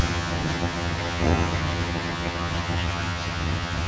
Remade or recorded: remade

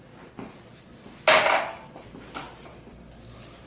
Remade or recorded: recorded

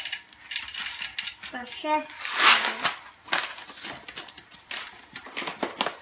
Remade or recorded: recorded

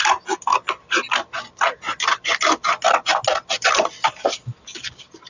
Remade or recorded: recorded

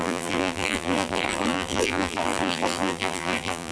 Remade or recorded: remade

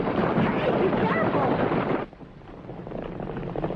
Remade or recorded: recorded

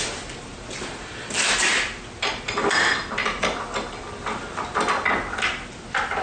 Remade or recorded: recorded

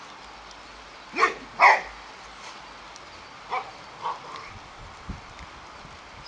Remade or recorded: recorded